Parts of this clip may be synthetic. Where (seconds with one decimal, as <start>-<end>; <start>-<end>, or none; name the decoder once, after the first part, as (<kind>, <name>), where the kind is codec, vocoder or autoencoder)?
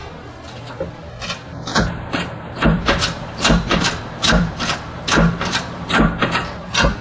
1.7-5.9 (vocoder, BigVGAN v2)